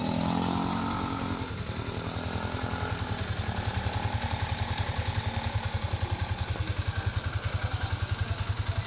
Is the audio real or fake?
real